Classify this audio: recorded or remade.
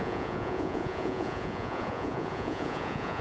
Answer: remade